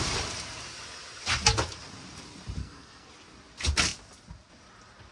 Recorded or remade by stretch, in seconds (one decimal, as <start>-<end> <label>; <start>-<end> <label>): 0.0-2.6 recorded; 2.6-3.1 remade; 3.1-5.1 recorded

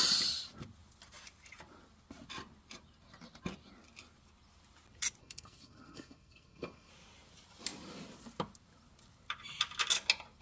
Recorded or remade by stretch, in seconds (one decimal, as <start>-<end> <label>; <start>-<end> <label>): 0.0-5.2 recorded; 5.2-6.9 remade; 6.9-10.4 recorded

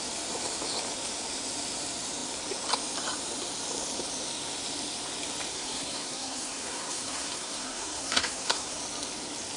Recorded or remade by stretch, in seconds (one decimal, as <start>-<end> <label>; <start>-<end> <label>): 0.0-5.5 recorded; 5.5-8.8 remade; 8.8-9.6 recorded